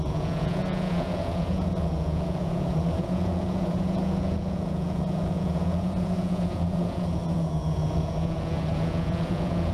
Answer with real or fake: fake